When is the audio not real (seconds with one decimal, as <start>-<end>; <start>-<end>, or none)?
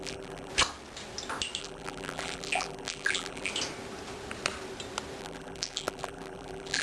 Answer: 0.0-0.5; 1.6-3.5; 5.2-6.8